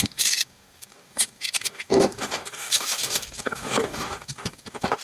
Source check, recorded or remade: remade